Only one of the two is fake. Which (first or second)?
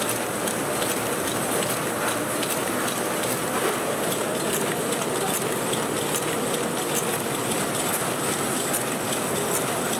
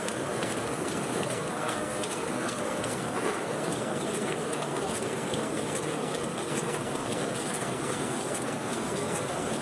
second